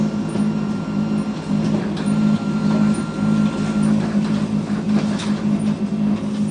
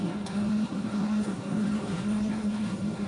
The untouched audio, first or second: first